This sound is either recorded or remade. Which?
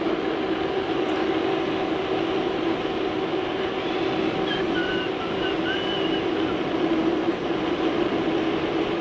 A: recorded